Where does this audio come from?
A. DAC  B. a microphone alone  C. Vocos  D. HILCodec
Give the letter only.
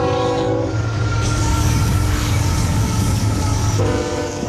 A